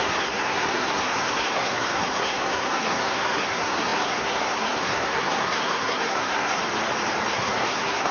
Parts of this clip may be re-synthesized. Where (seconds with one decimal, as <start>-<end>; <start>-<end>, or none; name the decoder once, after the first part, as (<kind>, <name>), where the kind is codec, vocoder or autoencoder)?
0.0-6.6 (codec, SNAC); 7.3-8.1